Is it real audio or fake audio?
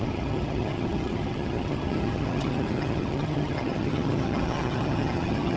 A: fake